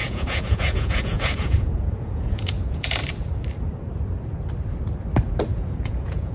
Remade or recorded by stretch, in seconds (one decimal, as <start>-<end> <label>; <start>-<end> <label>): 0.0-3.0 remade; 3.0-5.5 recorded; 5.5-6.3 remade